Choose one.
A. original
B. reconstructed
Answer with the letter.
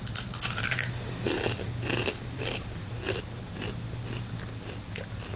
A